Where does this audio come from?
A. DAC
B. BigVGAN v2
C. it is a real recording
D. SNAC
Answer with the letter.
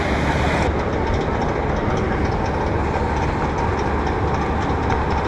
C